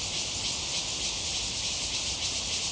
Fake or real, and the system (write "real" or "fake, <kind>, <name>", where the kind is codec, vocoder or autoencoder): real